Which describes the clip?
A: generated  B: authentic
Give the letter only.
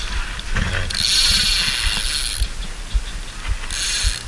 B